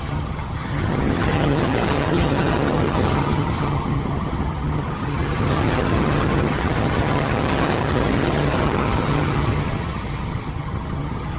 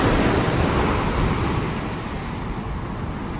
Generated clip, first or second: first